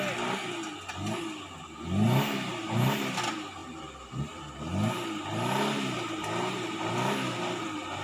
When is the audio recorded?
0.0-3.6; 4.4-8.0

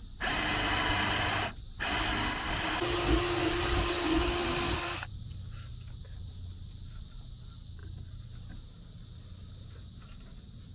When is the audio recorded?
0.0-4.4; 5.4-10.7

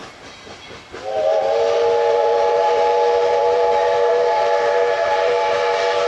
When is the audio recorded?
0.0-2.1